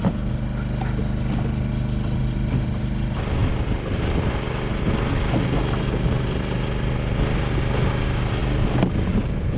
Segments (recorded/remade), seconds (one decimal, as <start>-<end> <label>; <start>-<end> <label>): 0.0-9.6 recorded